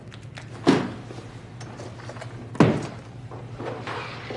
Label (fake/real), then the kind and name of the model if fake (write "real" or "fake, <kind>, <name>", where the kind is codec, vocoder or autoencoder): real